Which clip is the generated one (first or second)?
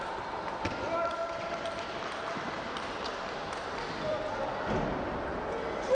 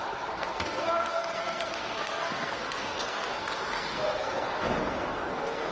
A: second